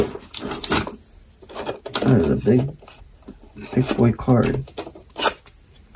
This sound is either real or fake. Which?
real